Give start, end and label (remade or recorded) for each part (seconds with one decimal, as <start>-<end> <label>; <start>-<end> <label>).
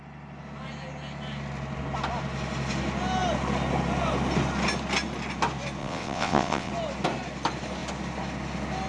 0.0-5.8 recorded; 5.8-6.7 remade; 6.7-8.9 recorded